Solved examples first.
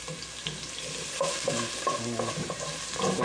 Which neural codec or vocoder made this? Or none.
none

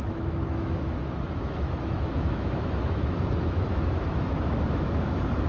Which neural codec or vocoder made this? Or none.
autoencoder, DAC-VAE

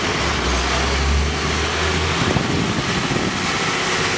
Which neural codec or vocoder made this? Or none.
none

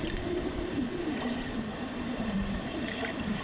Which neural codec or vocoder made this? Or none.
vocoder, BigVGAN v2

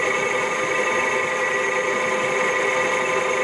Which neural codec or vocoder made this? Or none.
none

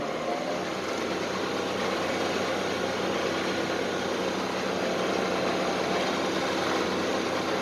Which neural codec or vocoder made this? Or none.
none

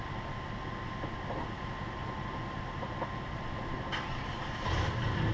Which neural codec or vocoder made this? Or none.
none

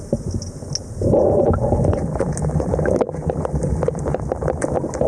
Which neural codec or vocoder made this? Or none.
none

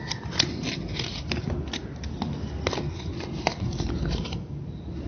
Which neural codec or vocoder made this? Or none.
none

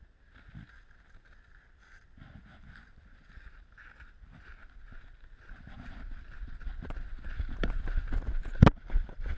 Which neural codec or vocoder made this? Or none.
none